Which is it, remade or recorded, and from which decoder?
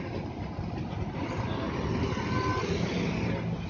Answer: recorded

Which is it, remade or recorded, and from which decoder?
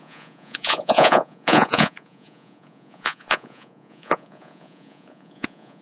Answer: remade, vocoder, Vocos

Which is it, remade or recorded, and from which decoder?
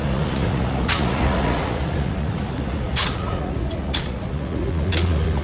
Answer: remade, vocoder, Vocos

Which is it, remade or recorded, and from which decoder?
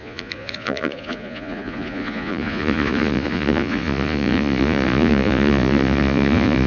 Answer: remade, vocoder, Vocos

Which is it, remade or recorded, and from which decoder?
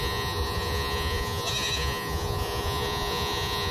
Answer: remade, vocoder, Vocos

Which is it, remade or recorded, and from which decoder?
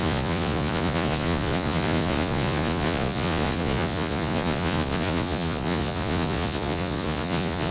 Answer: remade, vocoder, Vocos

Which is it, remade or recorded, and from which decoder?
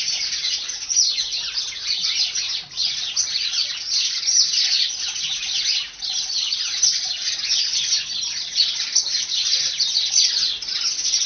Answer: recorded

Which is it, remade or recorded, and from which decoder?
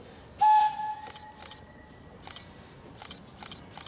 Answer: recorded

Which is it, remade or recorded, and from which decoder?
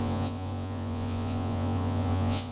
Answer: remade, vocoder, Vocos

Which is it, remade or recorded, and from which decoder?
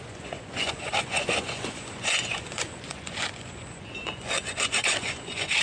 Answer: remade, vocoder, Vocos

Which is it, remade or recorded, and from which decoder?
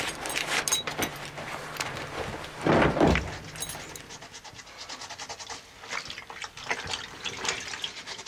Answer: recorded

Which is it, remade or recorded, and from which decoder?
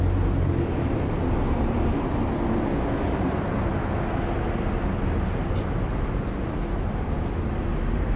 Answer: recorded